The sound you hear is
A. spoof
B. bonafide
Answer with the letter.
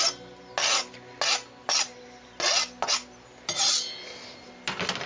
B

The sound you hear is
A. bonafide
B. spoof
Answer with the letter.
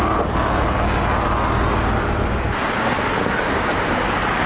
A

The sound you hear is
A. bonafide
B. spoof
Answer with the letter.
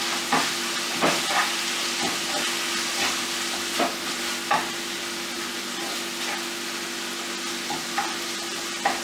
A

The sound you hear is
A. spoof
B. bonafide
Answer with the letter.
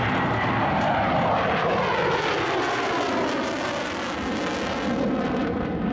B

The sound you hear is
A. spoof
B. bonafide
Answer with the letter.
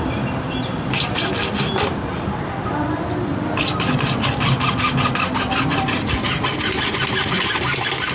B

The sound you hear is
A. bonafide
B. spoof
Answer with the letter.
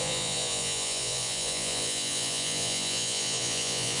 B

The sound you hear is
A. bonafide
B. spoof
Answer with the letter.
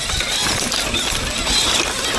A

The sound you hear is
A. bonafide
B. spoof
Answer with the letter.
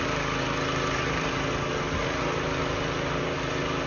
A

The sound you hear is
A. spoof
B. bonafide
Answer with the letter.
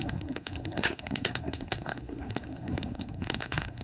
A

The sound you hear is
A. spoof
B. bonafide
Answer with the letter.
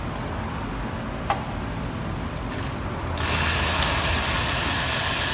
B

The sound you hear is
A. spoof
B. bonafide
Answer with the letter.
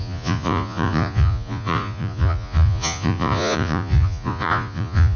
A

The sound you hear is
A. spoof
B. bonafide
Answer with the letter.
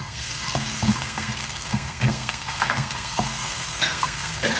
A